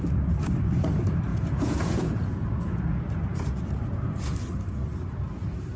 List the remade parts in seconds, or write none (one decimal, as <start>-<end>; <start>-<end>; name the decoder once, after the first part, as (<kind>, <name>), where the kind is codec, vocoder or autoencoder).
1.3-3.0 (vocoder, Vocos)